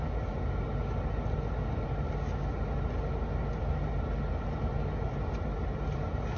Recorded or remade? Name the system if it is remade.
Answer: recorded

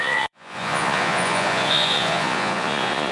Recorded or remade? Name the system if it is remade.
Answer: remade, vocoder, Vocos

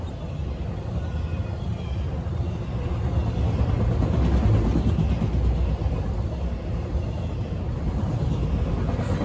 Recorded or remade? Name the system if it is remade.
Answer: recorded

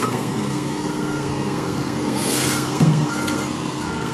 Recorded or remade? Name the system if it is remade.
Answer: remade, codec, SNAC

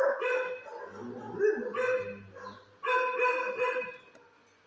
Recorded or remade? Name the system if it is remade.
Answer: recorded